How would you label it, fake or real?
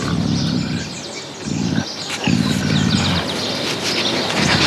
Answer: real